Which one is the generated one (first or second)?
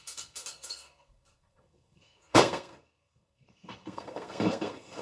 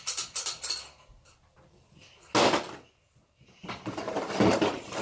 first